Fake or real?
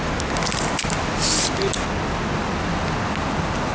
real